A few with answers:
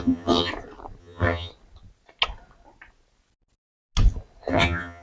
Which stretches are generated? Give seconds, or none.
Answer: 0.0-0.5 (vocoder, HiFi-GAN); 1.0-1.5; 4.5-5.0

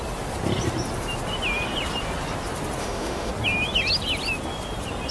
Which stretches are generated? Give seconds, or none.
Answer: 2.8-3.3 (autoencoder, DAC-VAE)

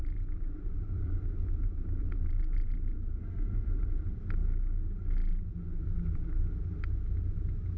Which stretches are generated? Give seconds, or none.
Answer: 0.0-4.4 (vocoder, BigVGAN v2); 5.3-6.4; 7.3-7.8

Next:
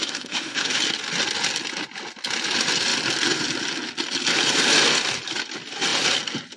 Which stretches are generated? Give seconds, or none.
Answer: 0.0-0.8 (autoencoder, DAC-VAE)

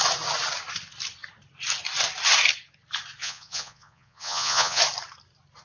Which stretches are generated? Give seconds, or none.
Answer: 3.2-4.8 (vocoder, Vocos)

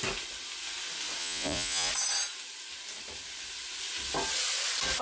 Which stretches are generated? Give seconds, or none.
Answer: 1.2-1.9 (vocoder, Vocos)

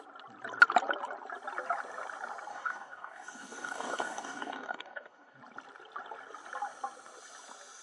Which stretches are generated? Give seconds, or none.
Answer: 2.5-5.4 (codec, DAC)